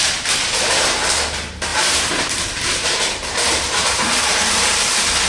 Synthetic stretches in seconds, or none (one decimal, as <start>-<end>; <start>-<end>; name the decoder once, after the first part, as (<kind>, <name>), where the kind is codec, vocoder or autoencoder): 1.7-5.3 (vocoder, BigVGAN v2)

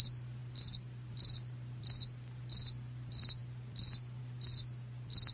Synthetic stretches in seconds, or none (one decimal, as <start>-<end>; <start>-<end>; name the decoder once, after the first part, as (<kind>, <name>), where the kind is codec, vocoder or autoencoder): none

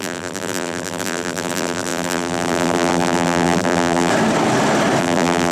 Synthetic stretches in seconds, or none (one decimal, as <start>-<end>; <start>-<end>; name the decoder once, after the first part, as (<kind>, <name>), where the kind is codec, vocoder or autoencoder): 0.0-4.1 (vocoder, BigVGAN v2); 5.0-5.5

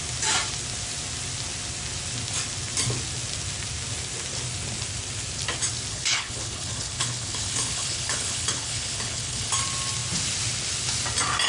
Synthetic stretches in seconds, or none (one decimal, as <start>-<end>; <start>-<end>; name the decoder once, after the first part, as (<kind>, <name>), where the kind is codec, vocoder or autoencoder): 5.9-9.5 (codec, HILCodec)